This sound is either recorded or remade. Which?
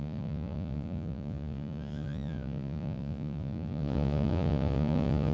remade